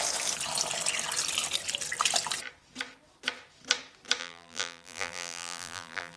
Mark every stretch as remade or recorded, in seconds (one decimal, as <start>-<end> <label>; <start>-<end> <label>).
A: 0.0-4.2 recorded; 4.2-6.2 remade